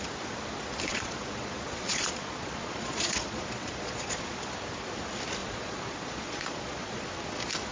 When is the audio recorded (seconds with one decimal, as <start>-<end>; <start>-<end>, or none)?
0.0-0.9; 4.5-5.4; 7.0-7.7